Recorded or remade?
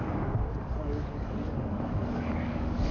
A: remade